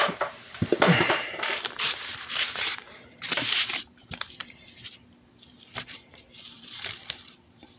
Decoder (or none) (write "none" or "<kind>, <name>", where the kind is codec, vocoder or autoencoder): vocoder, BigVGAN v2